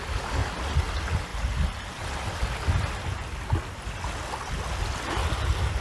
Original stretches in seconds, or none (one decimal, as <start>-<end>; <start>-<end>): 0.0-5.8